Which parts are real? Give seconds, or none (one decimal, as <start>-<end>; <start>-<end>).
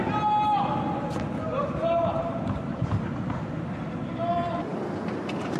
0.0-1.6; 3.5-5.6